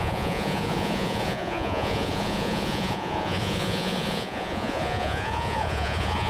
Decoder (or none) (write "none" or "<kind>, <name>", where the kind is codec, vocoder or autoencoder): vocoder, Vocos